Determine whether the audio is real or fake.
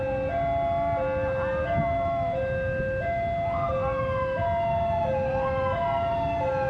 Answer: real